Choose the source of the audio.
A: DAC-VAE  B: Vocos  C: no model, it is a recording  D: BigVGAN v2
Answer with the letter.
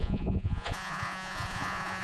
B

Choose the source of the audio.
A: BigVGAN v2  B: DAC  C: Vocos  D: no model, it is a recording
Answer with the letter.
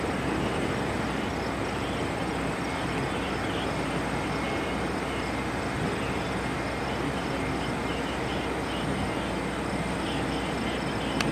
D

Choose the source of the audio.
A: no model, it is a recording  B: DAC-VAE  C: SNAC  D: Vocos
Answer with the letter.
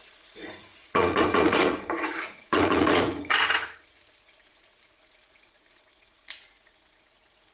D